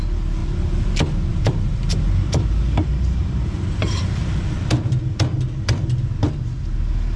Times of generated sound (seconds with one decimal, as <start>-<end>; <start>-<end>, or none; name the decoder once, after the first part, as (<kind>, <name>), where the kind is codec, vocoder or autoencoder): 0.4-0.9 (vocoder, BigVGAN v2); 1.3-2.5; 3.2-5.3